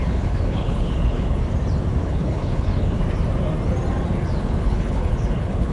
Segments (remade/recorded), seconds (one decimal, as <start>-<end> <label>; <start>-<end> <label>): 0.0-1.4 remade; 1.4-2.0 recorded; 2.0-3.0 remade; 3.0-4.4 recorded; 4.4-5.7 remade